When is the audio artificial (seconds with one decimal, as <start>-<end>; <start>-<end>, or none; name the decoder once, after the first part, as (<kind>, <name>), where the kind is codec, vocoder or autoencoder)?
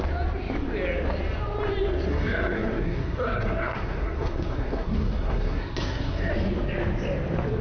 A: 2.1-6.3 (codec, SNAC)